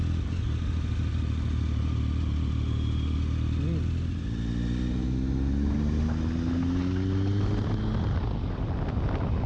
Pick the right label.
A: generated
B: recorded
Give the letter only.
B